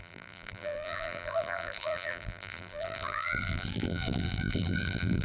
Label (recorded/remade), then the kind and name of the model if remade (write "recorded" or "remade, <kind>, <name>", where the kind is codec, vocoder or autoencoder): remade, vocoder, BigVGAN v2